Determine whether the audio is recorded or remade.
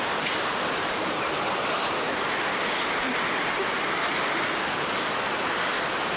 recorded